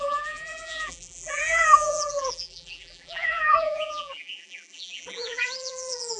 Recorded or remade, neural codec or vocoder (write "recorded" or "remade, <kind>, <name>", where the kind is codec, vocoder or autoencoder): remade, vocoder, BigVGAN v2